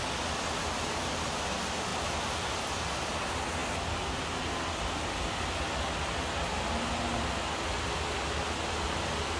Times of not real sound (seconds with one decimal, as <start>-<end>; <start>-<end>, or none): 1.9-2.7